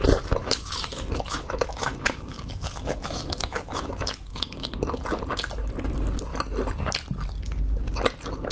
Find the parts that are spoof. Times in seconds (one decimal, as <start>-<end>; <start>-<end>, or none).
0.4-4.7